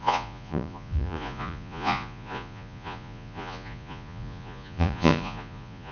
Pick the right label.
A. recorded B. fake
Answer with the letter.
B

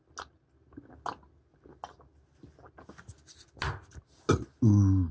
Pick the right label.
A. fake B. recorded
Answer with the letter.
B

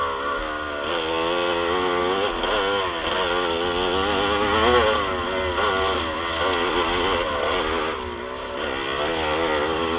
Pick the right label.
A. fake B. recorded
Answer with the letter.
B